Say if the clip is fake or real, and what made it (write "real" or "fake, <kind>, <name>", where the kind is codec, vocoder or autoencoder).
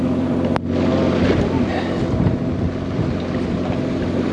real